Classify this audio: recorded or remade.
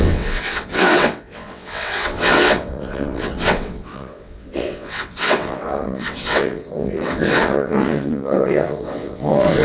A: remade